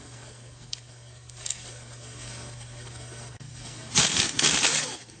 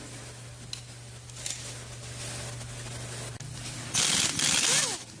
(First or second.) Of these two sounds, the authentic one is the second